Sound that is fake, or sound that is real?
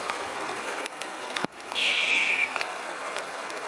fake